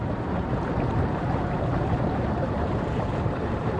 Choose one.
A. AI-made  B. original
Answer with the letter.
A